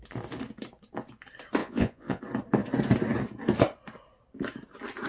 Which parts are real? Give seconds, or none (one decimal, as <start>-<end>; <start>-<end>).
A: 0.0-1.6; 2.2-5.1